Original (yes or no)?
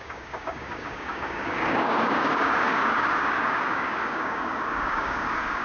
no